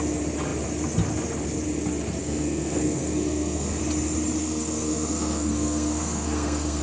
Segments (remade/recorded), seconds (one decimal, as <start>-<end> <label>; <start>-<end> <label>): 0.0-2.2 recorded; 2.2-3.8 remade; 3.8-4.4 recorded; 4.4-6.8 remade